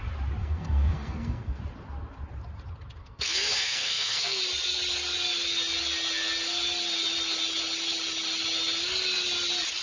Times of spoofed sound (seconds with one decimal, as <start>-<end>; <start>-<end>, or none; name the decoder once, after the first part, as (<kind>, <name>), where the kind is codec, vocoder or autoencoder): 0.4-1.6 (codec, SNAC); 3.0-4.4